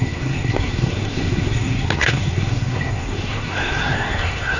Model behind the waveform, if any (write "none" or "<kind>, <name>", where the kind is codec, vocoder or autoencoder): codec, SNAC